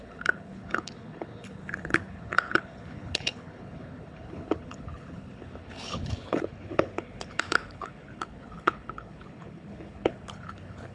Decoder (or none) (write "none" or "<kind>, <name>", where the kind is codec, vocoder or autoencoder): codec, HILCodec